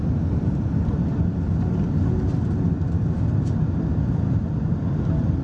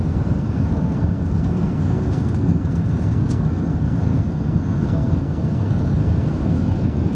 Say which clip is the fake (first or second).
second